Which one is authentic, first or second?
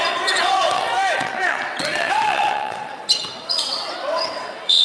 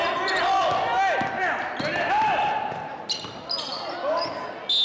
second